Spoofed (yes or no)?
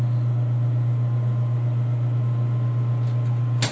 no